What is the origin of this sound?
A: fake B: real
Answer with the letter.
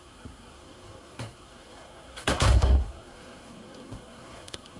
A